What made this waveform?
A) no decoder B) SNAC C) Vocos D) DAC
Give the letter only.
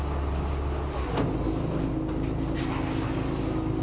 A